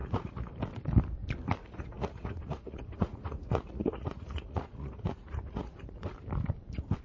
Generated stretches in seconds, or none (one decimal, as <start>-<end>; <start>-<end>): 0.0-0.5; 1.6-5.8